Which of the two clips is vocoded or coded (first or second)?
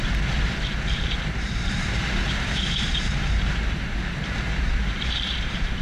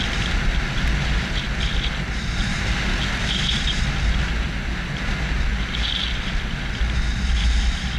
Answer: first